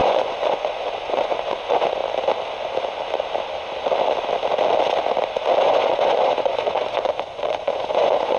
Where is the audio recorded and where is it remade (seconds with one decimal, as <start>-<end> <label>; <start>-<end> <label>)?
0.0-2.0 remade; 2.0-5.6 recorded; 5.6-8.4 remade